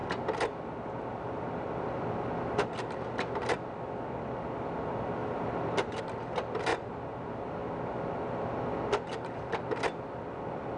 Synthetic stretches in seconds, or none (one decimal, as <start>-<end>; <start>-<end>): 5.2-6.0; 6.7-7.5